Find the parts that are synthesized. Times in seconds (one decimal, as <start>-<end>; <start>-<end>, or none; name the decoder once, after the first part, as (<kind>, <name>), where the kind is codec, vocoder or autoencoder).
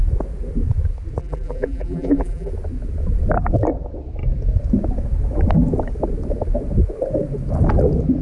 1.2-2.5 (vocoder, BigVGAN v2)